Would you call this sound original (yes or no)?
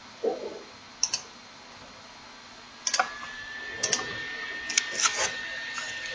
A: yes